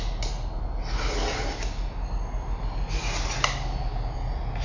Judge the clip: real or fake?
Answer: real